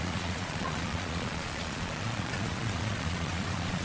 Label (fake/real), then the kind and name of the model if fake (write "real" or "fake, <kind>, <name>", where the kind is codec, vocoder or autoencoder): fake, vocoder, Vocos